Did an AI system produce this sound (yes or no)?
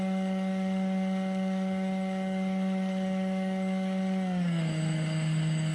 yes